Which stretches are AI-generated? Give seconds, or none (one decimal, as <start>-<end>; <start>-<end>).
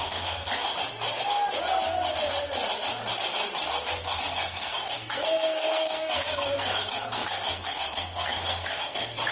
0.0-0.5; 4.0-9.3